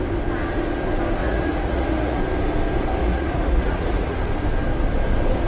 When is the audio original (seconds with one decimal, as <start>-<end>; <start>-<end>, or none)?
0.0-1.2; 2.2-3.0; 4.2-5.5